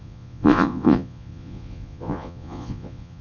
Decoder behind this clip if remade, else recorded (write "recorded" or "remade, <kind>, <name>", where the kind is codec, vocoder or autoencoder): remade, vocoder, Vocos